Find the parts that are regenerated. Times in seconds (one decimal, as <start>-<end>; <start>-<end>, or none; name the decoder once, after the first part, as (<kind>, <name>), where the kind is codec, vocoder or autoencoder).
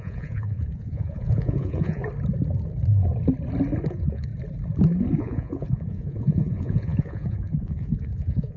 0.0-2.0 (vocoder, Vocos); 3.9-4.3; 5.2-8.6